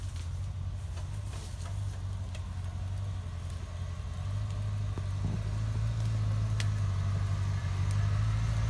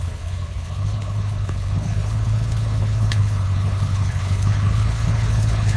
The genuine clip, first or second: first